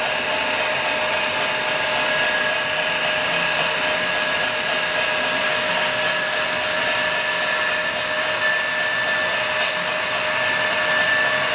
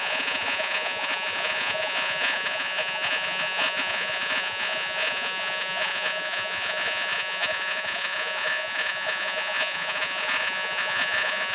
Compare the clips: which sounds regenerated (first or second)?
second